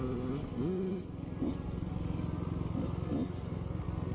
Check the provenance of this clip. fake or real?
real